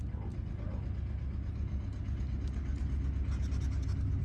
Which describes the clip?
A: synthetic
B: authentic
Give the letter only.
B